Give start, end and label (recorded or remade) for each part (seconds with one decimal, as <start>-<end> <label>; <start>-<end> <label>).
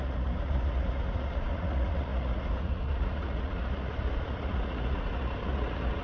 0.0-6.0 remade